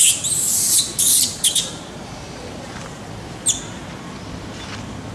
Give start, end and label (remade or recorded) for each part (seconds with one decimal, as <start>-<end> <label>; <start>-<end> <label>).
0.0-0.5 recorded; 0.5-3.6 remade; 3.6-5.1 recorded